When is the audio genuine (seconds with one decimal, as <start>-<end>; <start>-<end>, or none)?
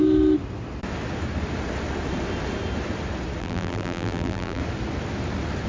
0.0-3.4; 4.6-5.7